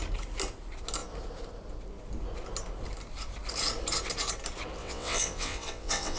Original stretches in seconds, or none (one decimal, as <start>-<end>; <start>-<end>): 0.0-4.8